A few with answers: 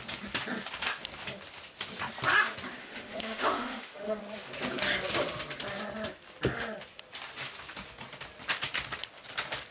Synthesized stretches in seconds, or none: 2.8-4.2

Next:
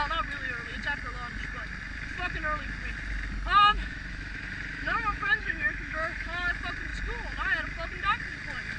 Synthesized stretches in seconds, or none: 3.7-6.5

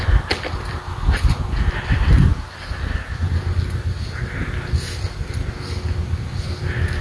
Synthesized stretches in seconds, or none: none

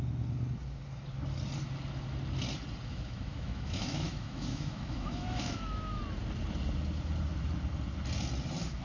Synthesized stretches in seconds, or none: 2.9-6.0

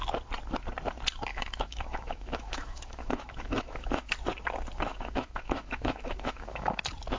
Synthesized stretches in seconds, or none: 1.3-4.1; 4.9-6.8